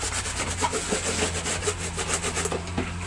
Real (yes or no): yes